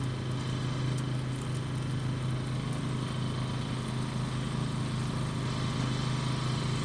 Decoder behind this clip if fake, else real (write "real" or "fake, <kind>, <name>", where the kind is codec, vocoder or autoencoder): real